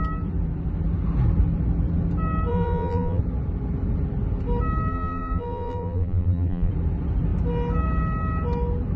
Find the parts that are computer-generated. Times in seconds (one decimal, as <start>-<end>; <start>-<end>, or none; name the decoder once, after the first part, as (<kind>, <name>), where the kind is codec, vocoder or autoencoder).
2.5-3.2 (vocoder, BigVGAN v2); 4.9-6.7